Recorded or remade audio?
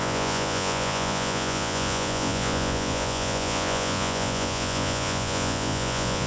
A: remade